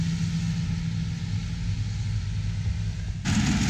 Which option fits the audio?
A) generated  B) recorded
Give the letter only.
B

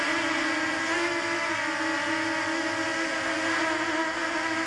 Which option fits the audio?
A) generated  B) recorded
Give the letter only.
B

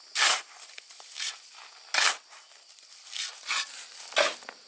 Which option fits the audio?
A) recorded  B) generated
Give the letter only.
A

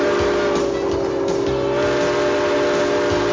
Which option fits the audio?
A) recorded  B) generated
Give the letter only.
A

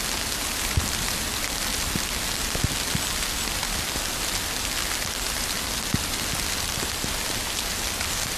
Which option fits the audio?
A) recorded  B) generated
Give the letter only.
A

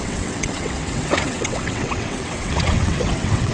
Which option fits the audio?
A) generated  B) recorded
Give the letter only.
A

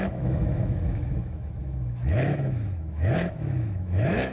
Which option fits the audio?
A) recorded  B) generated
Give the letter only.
B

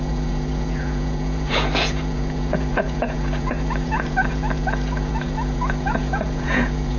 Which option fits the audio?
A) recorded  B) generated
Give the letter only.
B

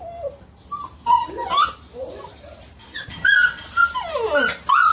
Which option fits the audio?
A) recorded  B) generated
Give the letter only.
A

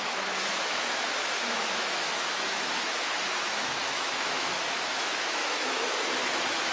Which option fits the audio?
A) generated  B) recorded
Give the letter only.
A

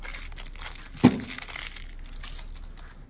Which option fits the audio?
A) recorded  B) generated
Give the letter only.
A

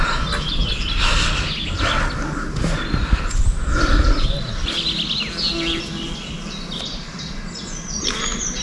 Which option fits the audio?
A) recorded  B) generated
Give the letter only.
A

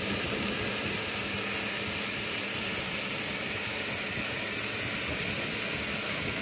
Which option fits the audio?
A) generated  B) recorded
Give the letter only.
B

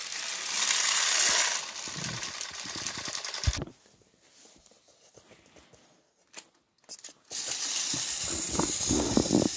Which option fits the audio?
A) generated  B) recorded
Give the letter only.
B